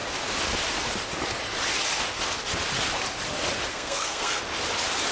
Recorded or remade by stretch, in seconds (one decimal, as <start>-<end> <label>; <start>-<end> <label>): 0.0-3.7 recorded; 3.7-4.4 remade; 4.4-5.1 recorded